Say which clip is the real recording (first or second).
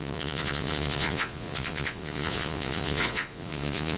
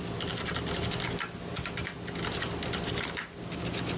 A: second